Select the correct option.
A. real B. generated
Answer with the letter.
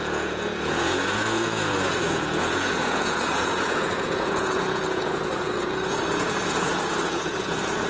B